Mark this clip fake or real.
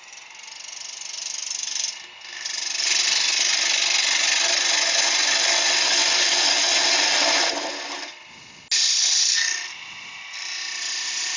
real